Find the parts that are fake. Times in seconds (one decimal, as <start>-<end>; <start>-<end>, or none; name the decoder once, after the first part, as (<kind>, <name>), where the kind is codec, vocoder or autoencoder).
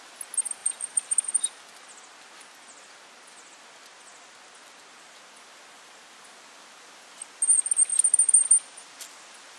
0.6-1.6 (vocoder, BigVGAN v2)